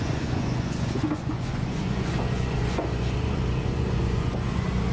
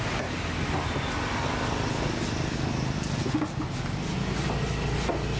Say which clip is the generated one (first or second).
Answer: first